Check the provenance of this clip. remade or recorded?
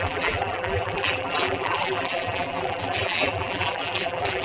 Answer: remade